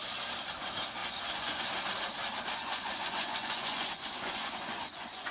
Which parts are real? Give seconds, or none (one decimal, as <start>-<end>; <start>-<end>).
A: 0.0-1.0; 1.6-2.6